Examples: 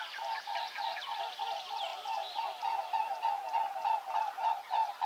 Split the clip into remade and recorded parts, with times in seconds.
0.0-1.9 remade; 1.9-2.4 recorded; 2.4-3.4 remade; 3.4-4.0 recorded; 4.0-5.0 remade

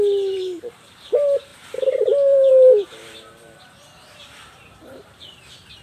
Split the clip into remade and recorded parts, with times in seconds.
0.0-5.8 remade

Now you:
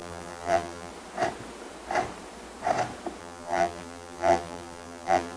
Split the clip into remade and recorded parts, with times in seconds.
0.0-0.9 remade; 0.9-3.2 recorded; 3.2-5.4 remade

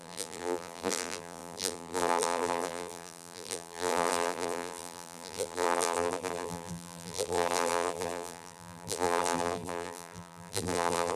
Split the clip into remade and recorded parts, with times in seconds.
0.0-11.2 remade

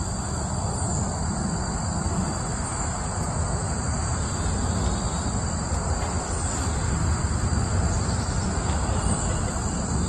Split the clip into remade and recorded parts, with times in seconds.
0.0-3.6 recorded; 3.6-4.3 remade; 4.3-10.1 recorded

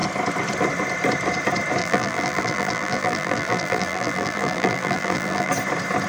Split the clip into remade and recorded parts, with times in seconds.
0.0-1.8 recorded; 1.8-5.5 remade; 5.5-6.1 recorded